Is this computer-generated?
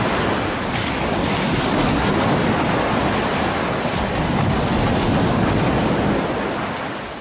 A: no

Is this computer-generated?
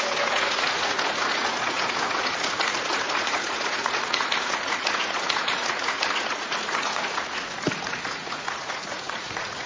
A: yes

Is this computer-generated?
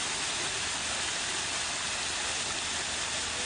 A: no